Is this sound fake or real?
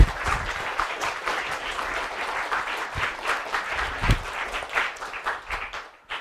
real